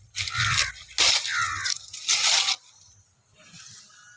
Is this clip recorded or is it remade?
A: recorded